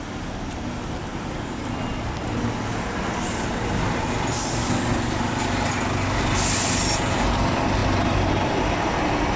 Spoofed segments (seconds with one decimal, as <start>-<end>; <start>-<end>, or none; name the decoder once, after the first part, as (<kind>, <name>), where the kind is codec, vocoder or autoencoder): none